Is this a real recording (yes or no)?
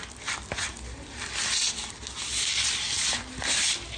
yes